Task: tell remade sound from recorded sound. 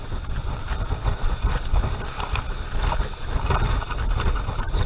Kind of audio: recorded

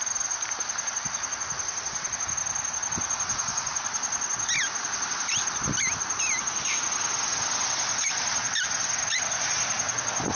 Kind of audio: recorded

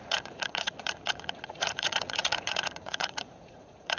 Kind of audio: remade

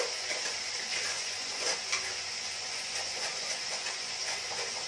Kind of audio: remade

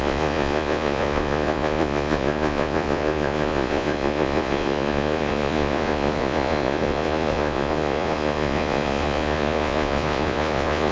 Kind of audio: remade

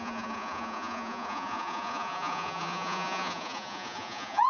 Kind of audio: remade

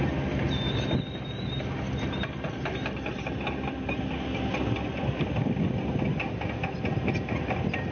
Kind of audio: recorded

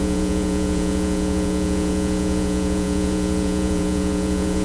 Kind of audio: remade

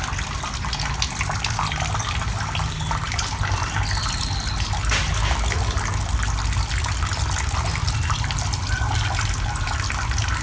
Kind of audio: recorded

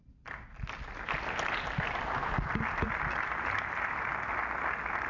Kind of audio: recorded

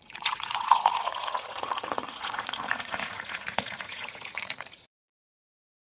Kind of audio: remade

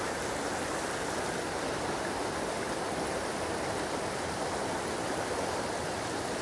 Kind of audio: recorded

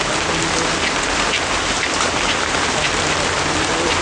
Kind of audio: recorded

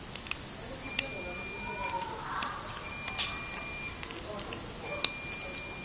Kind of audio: recorded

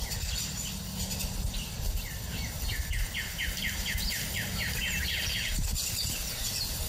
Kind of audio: recorded